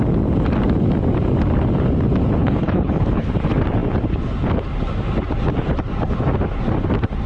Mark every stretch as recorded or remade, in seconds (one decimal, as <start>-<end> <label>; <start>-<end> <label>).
0.0-2.4 recorded; 2.4-3.3 remade; 3.3-7.3 recorded